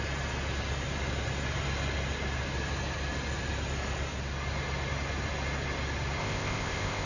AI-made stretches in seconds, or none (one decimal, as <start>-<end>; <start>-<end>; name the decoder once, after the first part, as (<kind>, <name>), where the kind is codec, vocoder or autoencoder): 6.2-7.1 (codec, ZipCodec)